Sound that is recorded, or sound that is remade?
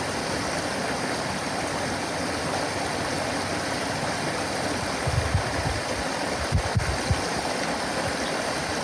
recorded